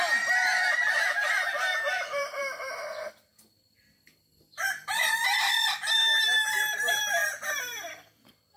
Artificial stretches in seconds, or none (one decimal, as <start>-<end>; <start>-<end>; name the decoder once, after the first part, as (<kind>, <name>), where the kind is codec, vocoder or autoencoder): 0.0-8.6 (vocoder, BigVGAN v2)